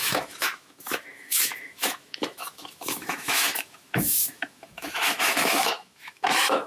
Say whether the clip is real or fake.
fake